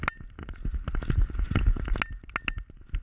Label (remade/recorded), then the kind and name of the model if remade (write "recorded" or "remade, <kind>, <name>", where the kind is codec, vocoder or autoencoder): recorded